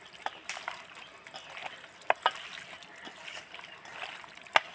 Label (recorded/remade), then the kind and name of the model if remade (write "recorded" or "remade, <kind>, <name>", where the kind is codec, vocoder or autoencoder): recorded